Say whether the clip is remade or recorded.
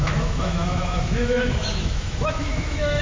remade